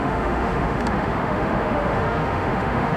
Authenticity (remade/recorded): remade